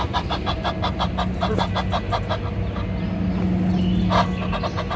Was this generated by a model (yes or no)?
no